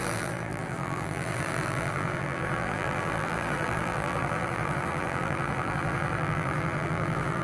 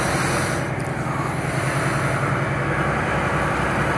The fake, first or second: first